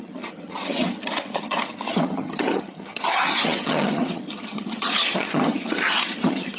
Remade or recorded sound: remade